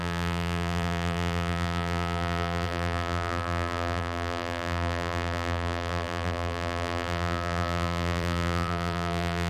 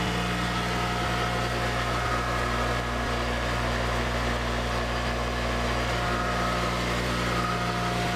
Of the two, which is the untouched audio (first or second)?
second